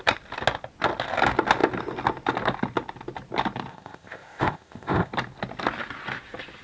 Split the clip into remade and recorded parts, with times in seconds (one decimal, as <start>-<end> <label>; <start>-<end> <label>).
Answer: 0.0-3.7 recorded; 3.7-5.1 remade; 5.1-6.6 recorded